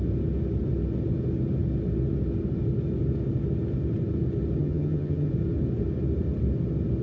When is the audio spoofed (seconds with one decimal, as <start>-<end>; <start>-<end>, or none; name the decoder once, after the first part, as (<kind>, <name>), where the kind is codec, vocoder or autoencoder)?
4.6-5.3 (vocoder, HiFi-GAN)